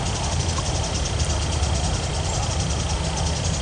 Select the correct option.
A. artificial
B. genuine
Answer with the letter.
B